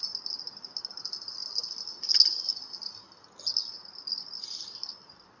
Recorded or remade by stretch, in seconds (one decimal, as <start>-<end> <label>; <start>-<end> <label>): 0.0-5.4 recorded